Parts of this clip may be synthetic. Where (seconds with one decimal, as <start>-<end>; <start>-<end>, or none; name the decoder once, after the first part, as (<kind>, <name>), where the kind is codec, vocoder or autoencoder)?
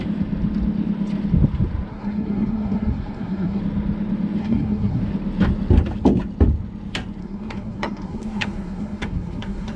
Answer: 1.9-3.6 (codec, SNAC); 4.4-5.0; 7.2-9.8